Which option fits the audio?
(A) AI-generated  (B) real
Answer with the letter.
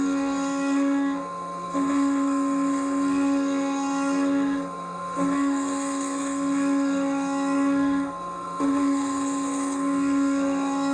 A